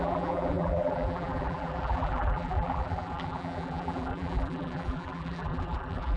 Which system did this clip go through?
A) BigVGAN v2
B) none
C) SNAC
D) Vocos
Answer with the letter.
A